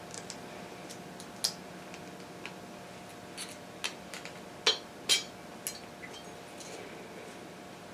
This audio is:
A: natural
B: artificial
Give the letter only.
A